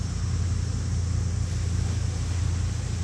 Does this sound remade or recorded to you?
recorded